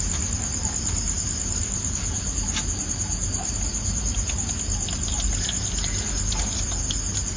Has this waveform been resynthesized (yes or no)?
no